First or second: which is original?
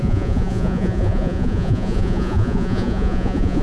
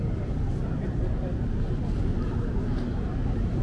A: second